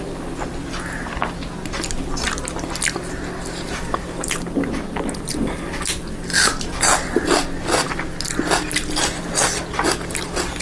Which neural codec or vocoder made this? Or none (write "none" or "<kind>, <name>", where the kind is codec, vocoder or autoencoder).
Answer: none